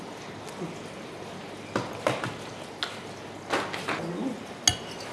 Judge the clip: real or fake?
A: real